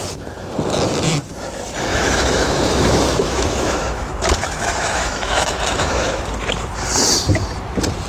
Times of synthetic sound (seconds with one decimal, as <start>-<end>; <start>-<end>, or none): 1.9-6.2